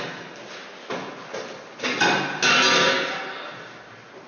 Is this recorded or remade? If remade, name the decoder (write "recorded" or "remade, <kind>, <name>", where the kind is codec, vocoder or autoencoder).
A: recorded